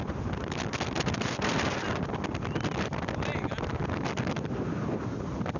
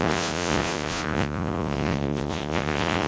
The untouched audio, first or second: first